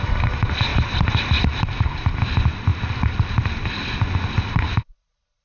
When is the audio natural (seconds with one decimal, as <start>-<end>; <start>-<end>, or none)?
0.7-1.4